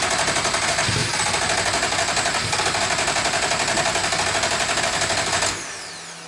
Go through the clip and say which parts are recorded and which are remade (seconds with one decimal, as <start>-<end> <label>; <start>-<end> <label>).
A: 0.0-6.3 recorded